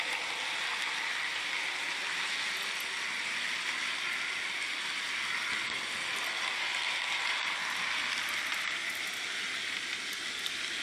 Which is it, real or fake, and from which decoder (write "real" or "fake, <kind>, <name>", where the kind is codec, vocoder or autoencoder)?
real